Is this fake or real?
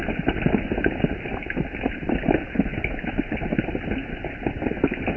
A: real